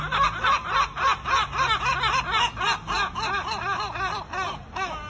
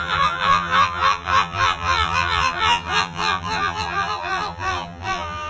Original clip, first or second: first